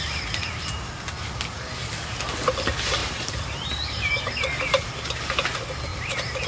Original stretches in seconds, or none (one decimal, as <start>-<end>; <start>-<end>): 0.0-3.0; 4.2-6.5